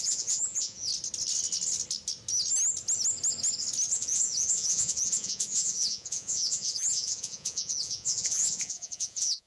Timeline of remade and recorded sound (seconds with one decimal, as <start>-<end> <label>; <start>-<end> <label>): 0.0-0.9 remade; 0.9-3.9 recorded; 3.9-9.5 remade